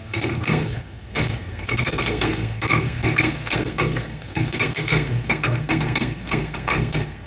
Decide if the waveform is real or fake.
fake